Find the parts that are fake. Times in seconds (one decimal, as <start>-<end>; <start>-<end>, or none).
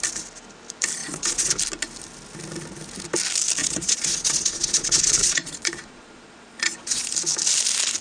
1.0-1.5; 3.6-7.1